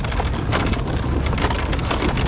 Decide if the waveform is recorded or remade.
recorded